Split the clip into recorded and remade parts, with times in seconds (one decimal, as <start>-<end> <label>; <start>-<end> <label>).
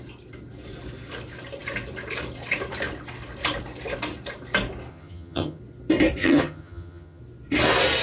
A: 0.0-4.9 recorded; 4.9-5.6 remade; 5.6-6.2 recorded; 6.2-7.2 remade; 7.2-8.0 recorded